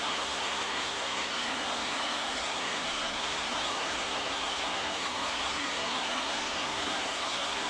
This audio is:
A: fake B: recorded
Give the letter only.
A